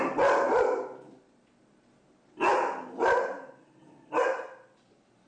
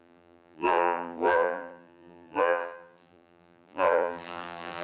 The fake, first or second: second